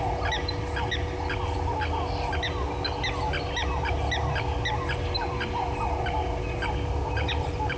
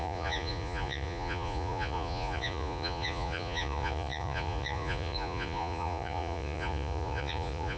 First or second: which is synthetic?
second